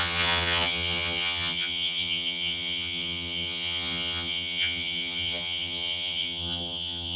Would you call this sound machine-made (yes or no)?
yes